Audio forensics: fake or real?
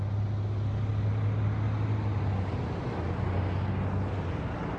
real